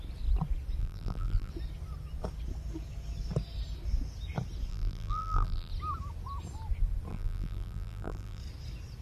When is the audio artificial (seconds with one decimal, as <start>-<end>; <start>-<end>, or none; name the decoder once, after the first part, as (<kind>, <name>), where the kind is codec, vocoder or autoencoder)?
0.8-1.5 (vocoder, BigVGAN v2); 4.7-5.7; 7.1-8.4